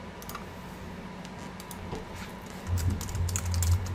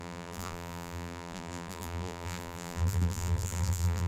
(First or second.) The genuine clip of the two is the first